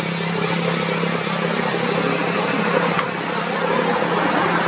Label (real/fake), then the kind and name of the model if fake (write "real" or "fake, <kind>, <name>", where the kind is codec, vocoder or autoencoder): real